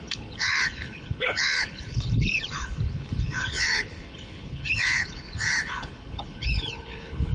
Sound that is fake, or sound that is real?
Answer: fake